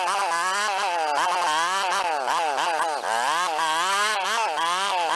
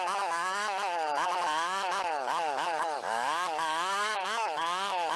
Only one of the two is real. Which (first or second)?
first